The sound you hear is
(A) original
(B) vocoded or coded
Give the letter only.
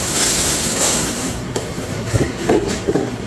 B